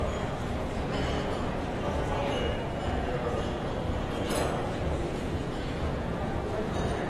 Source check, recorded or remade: remade